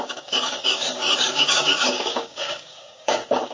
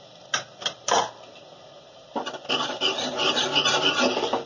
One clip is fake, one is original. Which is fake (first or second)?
first